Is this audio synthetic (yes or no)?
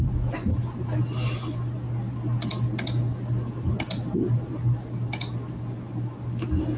no